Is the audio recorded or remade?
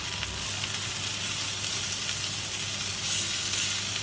recorded